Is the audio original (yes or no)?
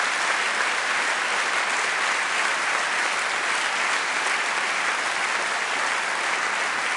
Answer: yes